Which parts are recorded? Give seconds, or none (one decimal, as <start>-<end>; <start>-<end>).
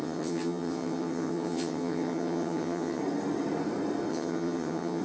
3.0-4.1